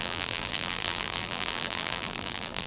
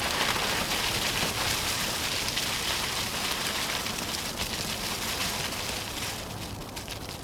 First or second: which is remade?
first